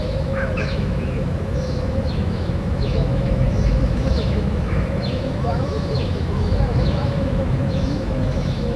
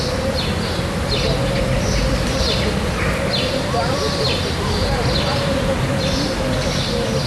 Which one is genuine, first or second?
second